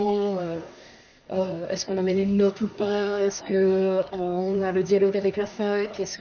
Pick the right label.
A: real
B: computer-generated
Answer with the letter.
B